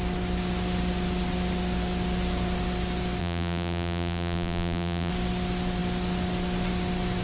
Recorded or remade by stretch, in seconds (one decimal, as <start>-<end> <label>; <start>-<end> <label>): 0.0-3.2 recorded; 3.2-5.1 remade; 5.1-7.2 recorded

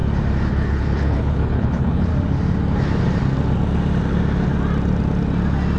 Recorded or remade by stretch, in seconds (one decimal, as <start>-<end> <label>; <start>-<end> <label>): 0.0-0.5 recorded; 0.5-2.1 remade; 2.1-5.8 recorded

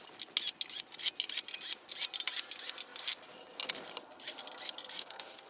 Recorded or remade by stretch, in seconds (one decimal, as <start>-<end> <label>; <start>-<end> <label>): 0.0-5.0 recorded; 5.0-5.5 remade

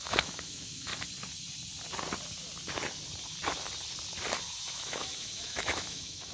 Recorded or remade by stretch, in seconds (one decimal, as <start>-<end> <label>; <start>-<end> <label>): 0.0-0.9 remade; 0.9-4.7 recorded; 4.7-6.3 remade